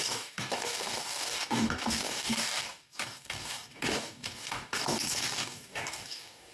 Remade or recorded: remade